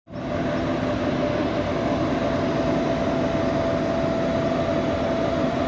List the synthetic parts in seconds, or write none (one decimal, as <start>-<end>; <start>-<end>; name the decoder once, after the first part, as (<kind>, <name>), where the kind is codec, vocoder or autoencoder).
none